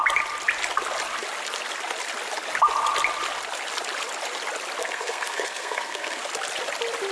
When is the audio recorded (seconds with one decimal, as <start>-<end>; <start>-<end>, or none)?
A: 0.0-4.8; 6.2-7.1